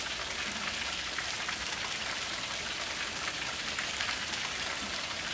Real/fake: real